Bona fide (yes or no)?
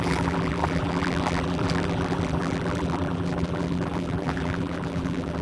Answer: no